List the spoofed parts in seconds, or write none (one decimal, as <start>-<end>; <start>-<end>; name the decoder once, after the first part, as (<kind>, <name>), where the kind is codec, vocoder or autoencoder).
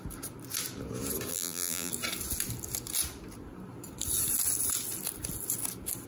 1.3-1.9 (vocoder, BigVGAN v2)